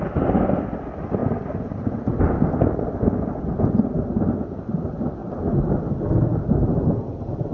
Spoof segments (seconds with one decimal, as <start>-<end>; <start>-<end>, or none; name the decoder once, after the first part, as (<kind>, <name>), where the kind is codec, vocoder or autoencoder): none